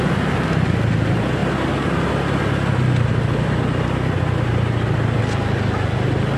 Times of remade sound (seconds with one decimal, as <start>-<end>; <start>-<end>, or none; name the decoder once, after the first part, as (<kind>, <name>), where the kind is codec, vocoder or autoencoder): none